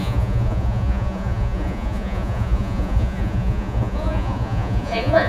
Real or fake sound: fake